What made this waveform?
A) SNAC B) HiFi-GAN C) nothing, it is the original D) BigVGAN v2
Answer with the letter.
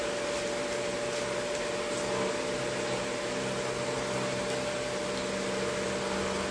C